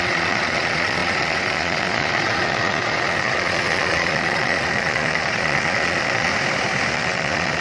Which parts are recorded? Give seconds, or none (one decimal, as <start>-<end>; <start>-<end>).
6.3-6.9